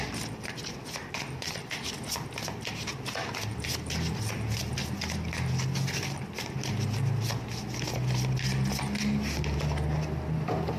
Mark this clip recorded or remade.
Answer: recorded